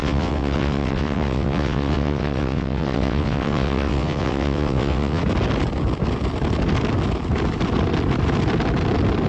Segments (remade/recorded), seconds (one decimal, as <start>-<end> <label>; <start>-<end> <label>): 0.0-5.2 remade; 5.2-9.3 recorded